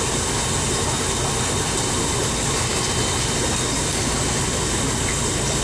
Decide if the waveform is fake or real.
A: real